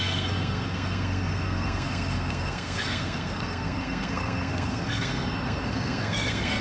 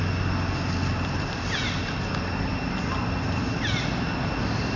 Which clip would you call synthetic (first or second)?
first